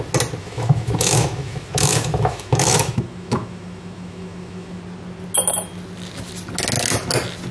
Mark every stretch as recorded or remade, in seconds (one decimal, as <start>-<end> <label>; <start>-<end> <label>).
0.0-0.4 recorded; 0.4-4.8 remade; 4.8-7.5 recorded